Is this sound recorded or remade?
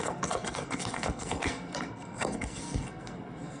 remade